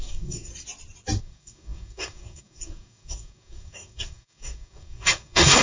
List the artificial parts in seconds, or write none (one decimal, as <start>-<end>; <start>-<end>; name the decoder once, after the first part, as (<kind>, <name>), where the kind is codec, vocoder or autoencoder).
0.0-0.5 (codec, DAC); 1.2-5.6